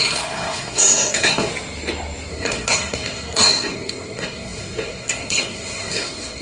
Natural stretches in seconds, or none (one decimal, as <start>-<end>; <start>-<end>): 1.5-2.3